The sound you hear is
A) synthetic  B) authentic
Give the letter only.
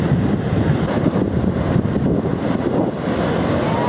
B